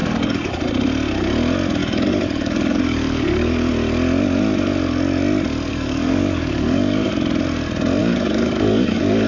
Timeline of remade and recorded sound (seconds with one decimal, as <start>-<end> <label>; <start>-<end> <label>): 0.0-0.6 remade; 0.6-1.8 recorded; 1.8-3.7 remade; 3.7-5.7 recorded; 5.7-7.1 remade; 7.1-8.0 recorded; 8.0-9.3 remade